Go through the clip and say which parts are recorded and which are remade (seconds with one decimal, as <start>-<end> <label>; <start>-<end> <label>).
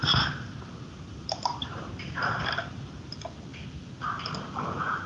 0.0-3.1 remade; 3.1-5.1 recorded